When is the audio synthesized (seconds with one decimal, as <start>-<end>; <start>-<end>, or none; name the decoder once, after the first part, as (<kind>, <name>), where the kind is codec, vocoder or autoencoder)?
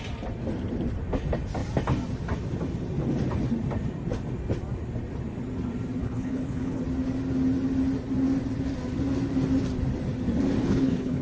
6.0-6.8 (codec, HILCodec); 10.6-11.2